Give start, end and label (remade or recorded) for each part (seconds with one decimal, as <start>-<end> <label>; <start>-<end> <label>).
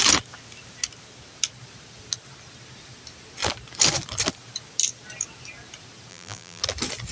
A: 0.0-6.1 recorded; 6.1-6.6 remade; 6.6-7.1 recorded